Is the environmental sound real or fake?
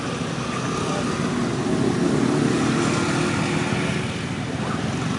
real